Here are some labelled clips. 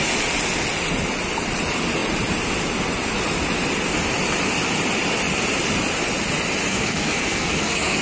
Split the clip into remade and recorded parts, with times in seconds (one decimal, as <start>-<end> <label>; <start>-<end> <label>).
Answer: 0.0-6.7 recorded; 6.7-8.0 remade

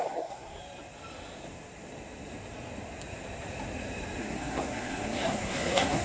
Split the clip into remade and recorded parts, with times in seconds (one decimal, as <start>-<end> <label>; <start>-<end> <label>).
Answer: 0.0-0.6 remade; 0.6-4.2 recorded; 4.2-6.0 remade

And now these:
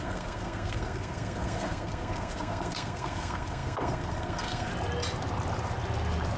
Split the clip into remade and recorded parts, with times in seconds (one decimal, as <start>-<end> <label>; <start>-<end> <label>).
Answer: 0.0-4.7 remade; 4.7-6.4 recorded

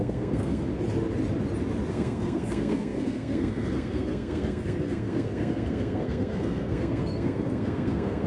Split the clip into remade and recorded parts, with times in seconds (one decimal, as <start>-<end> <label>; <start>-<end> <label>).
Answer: 0.0-0.7 remade; 0.7-1.9 recorded; 1.9-8.3 remade

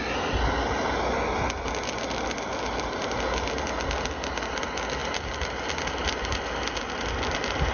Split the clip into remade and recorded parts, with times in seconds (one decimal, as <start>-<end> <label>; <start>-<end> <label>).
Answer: 0.0-7.7 recorded

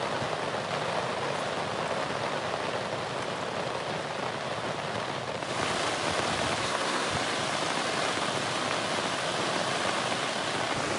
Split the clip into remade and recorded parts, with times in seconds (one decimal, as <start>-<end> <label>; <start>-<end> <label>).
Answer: 0.0-6.6 recorded; 6.6-7.1 remade; 7.1-11.0 recorded

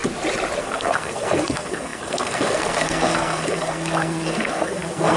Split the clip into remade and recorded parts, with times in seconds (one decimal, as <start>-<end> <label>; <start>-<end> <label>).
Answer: 0.0-0.6 recorded; 0.6-5.2 remade

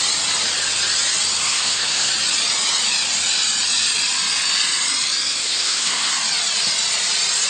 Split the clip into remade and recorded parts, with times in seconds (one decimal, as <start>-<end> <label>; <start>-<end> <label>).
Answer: 0.0-1.4 recorded; 1.4-2.1 remade; 2.1-5.4 recorded; 5.4-6.1 remade; 6.1-7.5 recorded